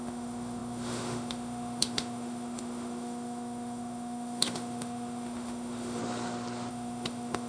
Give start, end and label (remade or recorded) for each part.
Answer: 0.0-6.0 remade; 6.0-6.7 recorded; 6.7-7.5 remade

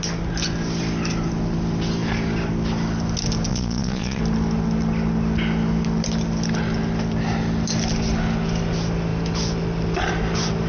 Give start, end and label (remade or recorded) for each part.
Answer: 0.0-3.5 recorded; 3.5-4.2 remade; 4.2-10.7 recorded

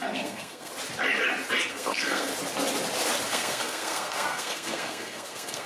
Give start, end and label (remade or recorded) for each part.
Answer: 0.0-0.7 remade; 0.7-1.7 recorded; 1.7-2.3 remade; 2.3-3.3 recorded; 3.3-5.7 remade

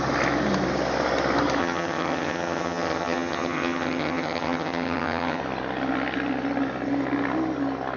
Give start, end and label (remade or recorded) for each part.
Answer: 0.0-1.6 recorded; 1.6-5.4 remade; 5.4-8.0 recorded

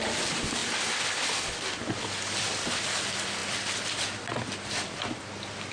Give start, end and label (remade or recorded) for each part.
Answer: 0.0-5.7 recorded

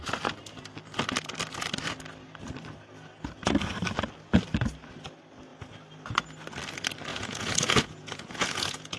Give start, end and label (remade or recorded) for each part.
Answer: 0.0-7.1 recorded; 7.1-9.0 remade

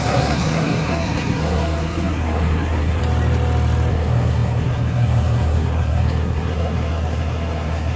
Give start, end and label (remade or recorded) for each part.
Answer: 0.0-3.0 remade; 3.0-3.9 recorded; 3.9-8.0 remade

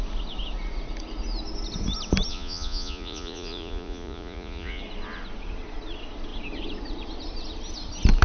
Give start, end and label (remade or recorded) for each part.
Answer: 0.0-2.3 recorded; 2.3-4.8 remade; 4.8-8.2 recorded